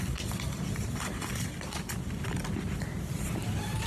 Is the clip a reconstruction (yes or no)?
no